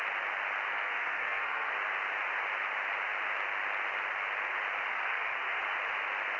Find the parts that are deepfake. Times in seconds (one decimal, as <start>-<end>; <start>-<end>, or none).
0.7-1.7; 4.9-5.6